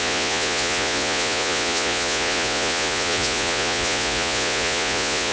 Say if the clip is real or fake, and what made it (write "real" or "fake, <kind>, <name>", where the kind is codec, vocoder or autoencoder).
fake, vocoder, Vocos